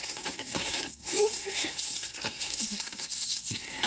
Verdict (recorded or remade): remade